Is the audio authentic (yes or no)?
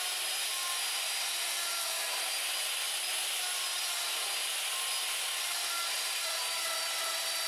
yes